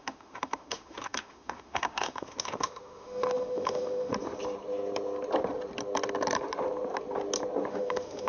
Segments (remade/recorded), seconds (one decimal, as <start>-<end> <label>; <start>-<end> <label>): 0.0-4.1 remade; 4.1-7.7 recorded; 7.7-8.3 remade